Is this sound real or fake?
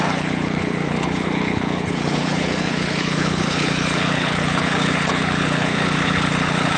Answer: fake